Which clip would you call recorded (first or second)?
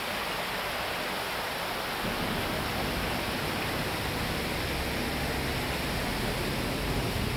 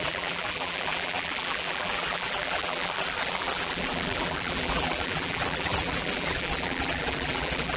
first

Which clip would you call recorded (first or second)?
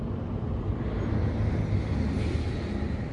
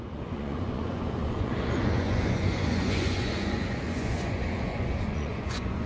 first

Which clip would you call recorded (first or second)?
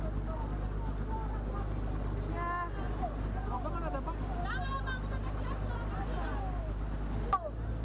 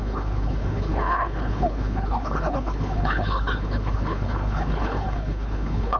first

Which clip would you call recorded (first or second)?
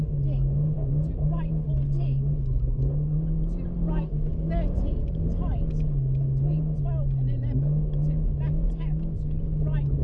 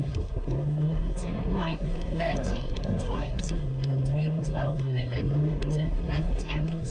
first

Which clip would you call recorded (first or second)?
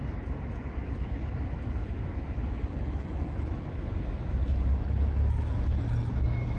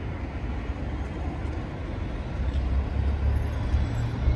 second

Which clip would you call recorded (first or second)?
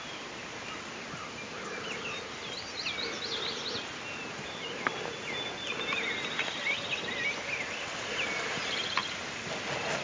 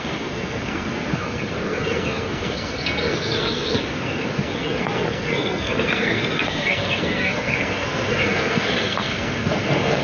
first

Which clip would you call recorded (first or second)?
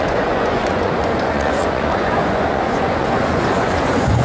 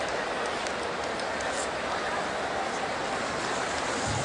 second